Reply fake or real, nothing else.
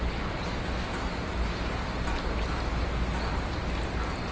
real